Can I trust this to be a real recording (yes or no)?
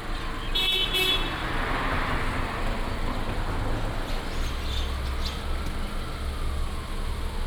yes